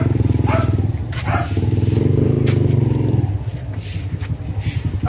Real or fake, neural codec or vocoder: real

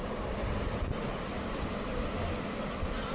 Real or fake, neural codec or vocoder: real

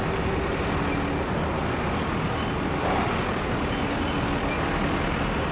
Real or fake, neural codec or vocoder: real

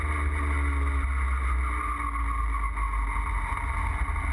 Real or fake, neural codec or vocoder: real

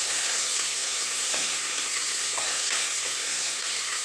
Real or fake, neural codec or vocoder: fake, codec, SNAC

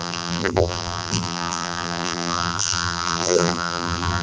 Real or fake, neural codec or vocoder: fake, vocoder, BigVGAN v2